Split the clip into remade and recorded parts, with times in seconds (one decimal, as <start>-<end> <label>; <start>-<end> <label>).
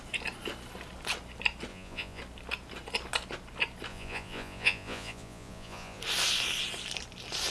0.0-1.7 recorded; 1.7-2.2 remade; 2.2-3.9 recorded; 3.9-6.0 remade; 6.0-7.5 recorded